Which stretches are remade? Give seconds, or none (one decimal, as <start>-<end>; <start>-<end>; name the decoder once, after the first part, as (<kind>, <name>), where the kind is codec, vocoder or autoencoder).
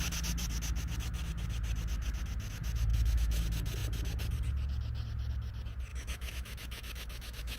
2.9-3.4 (autoencoder, DAC-VAE); 5.9-7.6